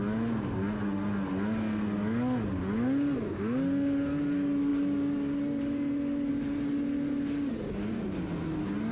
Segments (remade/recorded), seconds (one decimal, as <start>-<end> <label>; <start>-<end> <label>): 0.0-8.9 recorded